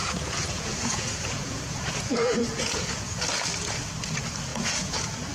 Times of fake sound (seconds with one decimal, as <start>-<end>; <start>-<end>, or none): 0.0-3.2; 4.5-5.3